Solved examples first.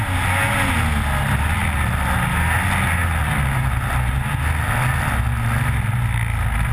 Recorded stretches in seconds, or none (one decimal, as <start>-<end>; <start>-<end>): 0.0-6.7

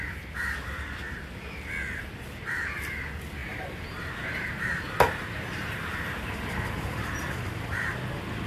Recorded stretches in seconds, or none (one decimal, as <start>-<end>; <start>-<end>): 0.0-3.4; 7.9-8.5

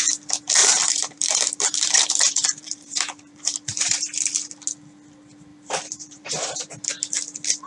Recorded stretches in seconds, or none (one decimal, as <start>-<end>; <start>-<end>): 0.0-0.6; 4.3-5.5; 6.7-7.7

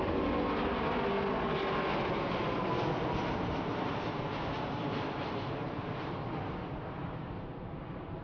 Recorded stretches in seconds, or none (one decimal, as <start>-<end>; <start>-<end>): 0.0-3.2